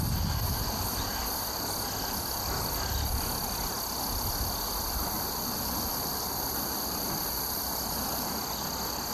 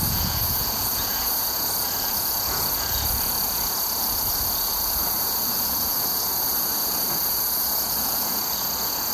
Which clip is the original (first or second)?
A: first